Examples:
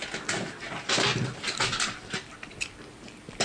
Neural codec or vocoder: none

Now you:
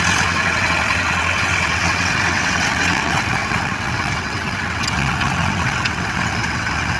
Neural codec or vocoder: vocoder, WaveNeXt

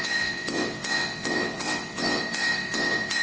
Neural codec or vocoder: vocoder, WaveNeXt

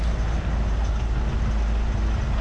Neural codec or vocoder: none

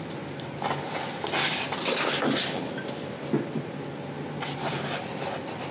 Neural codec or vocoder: none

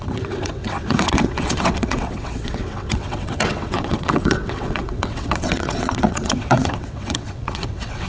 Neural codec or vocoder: vocoder, WaveNeXt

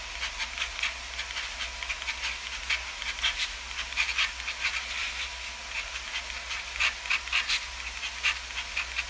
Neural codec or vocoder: none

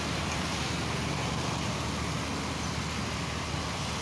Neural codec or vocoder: none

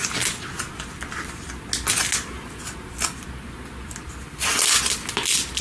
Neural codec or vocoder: none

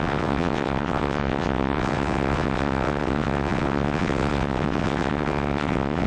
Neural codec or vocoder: vocoder, WaveNeXt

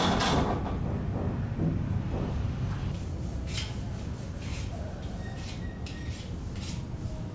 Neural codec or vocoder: none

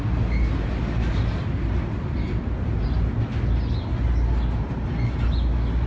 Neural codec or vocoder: none